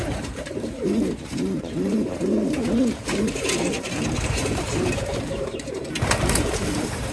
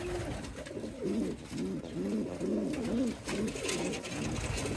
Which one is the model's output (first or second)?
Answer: first